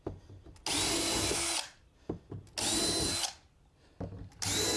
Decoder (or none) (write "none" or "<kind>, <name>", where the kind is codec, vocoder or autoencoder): none